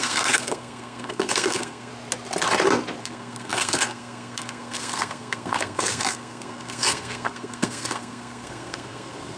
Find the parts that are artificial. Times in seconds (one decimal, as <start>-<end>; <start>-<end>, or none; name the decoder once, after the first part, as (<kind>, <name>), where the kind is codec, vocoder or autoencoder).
0.0-1.9 (codec, SNAC); 3.0-9.4